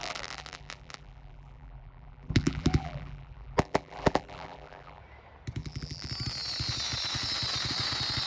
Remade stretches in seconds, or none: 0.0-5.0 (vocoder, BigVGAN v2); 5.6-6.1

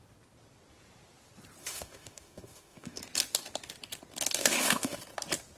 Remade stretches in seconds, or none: 1.6-3.0 (autoencoder, DAC-VAE); 4.4-5.0

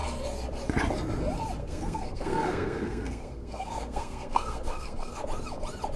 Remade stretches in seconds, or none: 1.6-5.2 (codec, SNAC)

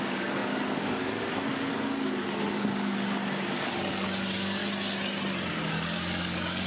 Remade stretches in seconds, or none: 0.0-4.6 (codec, DAC); 5.5-6.7

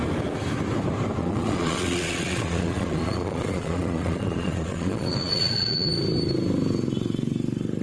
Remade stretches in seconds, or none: 1.2-5.9 (vocoder, Vocos)

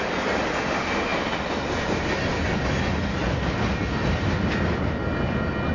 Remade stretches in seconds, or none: none